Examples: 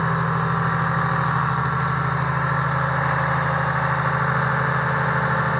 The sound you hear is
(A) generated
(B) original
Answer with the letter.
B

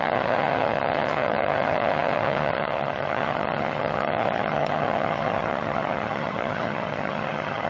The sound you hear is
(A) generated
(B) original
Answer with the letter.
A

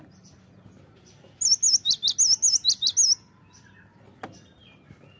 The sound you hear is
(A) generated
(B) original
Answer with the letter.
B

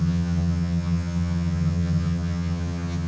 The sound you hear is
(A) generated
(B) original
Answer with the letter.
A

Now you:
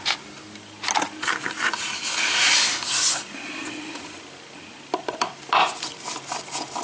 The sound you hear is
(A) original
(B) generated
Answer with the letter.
A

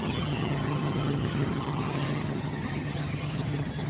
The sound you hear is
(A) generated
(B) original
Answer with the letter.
A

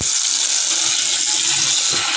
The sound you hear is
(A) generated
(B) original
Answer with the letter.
B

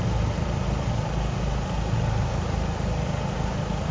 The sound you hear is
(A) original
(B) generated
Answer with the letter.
A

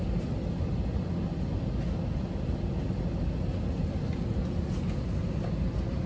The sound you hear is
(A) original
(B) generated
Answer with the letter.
A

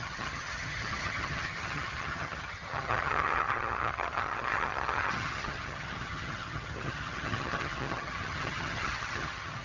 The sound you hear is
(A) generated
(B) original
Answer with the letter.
A